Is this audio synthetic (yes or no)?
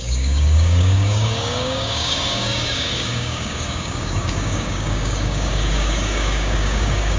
yes